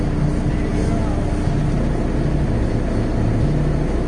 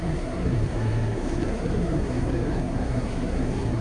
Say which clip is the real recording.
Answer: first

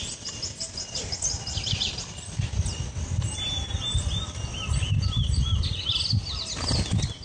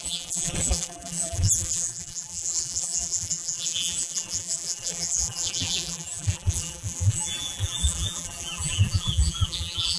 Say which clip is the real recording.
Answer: first